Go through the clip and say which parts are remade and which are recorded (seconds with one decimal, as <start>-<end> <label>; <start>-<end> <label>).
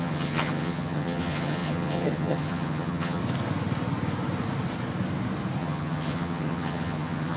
0.0-3.2 remade; 3.2-5.6 recorded; 5.6-7.4 remade